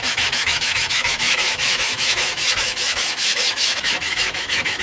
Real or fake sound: fake